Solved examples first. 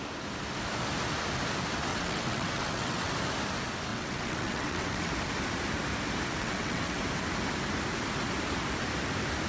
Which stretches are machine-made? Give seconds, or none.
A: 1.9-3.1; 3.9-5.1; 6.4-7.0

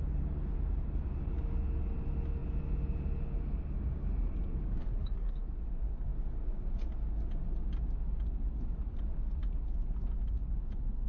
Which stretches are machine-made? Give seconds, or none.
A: 5.0-5.6

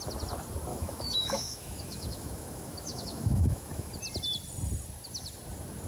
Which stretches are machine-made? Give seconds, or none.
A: 0.7-3.9

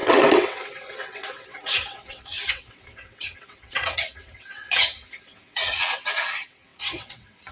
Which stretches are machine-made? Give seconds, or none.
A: 0.0-7.5

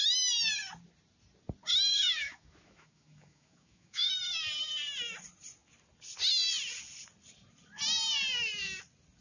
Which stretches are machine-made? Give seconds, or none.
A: 1.9-4.1